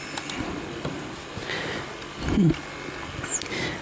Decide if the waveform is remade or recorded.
recorded